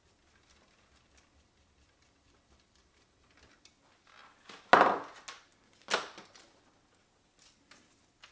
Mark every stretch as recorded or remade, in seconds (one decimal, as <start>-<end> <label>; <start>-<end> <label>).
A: 0.0-8.3 recorded